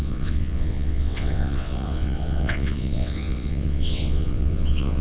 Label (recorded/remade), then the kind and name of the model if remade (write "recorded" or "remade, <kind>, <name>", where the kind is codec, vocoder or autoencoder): remade, vocoder, WaveNeXt